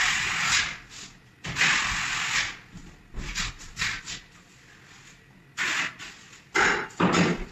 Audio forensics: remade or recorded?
recorded